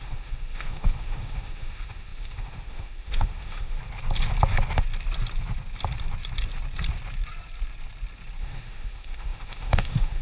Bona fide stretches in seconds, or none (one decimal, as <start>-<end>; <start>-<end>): 3.8-8.4